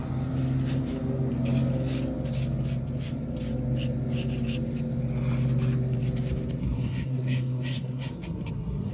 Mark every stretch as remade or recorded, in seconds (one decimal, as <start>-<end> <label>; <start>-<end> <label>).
0.0-6.6 recorded; 6.6-8.9 remade